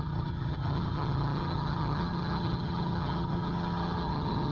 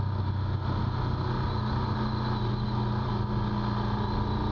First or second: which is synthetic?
first